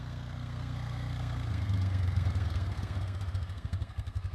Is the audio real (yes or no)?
no